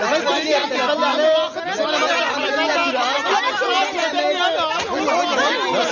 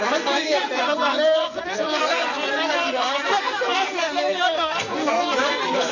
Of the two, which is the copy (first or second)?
second